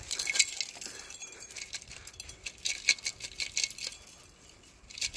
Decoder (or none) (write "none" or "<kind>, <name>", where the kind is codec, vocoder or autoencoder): none